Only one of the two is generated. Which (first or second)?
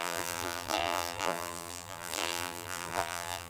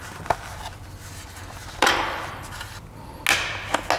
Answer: first